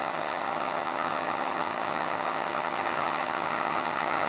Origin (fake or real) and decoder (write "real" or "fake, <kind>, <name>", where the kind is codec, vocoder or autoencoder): fake, vocoder, HiFi-GAN